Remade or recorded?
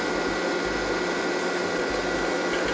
recorded